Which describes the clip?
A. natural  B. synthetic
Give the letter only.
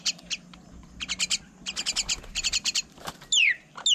A